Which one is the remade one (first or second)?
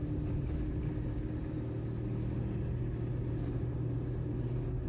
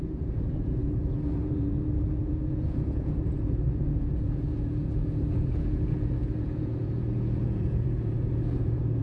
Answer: second